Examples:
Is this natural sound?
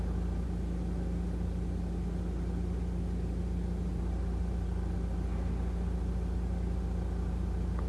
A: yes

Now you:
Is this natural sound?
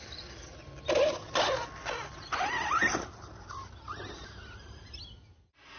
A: yes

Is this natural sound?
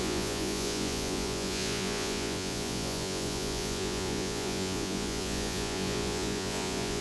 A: no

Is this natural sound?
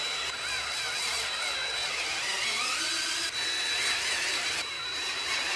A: yes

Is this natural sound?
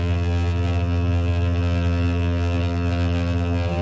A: no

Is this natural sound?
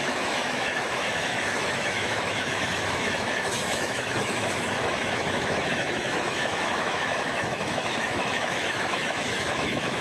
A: no